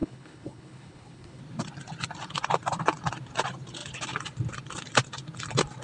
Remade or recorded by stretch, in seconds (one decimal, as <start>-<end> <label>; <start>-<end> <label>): 0.0-1.4 remade; 1.4-5.8 recorded